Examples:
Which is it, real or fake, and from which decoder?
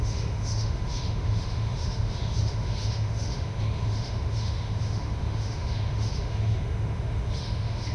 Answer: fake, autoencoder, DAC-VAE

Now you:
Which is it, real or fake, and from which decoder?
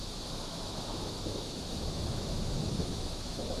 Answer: fake, autoencoder, DAC-VAE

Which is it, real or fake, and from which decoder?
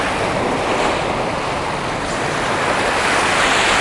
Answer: real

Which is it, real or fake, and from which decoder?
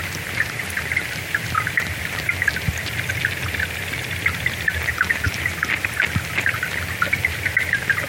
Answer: real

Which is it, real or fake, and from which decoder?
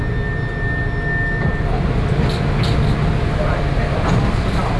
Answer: real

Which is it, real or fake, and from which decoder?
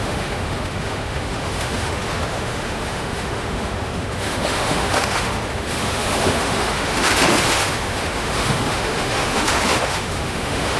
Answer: fake, autoencoder, DAC-VAE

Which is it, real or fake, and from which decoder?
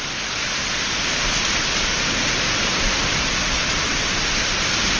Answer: real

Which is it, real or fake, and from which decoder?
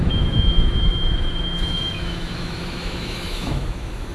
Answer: fake, autoencoder, DAC-VAE